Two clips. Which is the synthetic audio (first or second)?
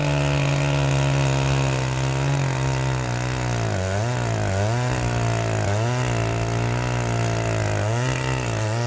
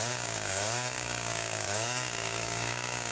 second